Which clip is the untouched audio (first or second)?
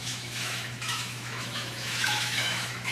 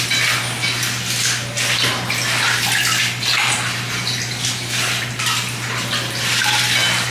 second